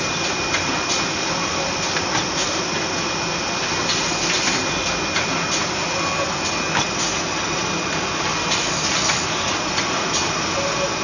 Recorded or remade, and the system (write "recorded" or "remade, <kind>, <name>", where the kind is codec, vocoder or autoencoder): recorded